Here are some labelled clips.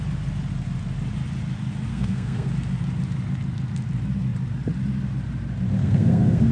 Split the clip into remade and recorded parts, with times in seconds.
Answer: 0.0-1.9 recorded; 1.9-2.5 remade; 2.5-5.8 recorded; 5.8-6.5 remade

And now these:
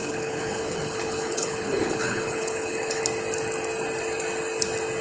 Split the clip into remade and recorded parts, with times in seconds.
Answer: 0.0-3.0 remade; 3.0-5.0 recorded

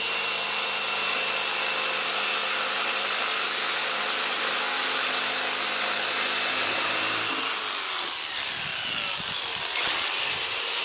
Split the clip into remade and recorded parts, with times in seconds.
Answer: 0.0-10.8 recorded

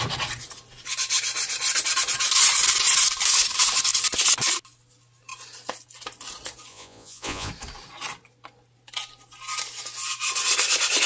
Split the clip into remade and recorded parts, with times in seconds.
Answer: 0.0-6.7 recorded; 6.7-7.5 remade; 7.5-11.1 recorded

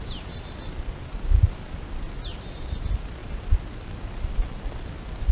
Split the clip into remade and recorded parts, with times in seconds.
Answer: 0.0-5.3 recorded

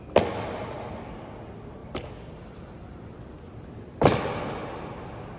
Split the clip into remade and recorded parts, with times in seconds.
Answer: 0.0-1.8 recorded; 1.8-3.9 remade; 3.9-5.4 recorded

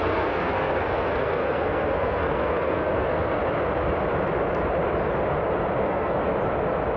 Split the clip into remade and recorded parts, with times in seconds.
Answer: 0.0-3.4 remade; 3.4-5.8 recorded; 5.8-6.2 remade; 6.2-7.0 recorded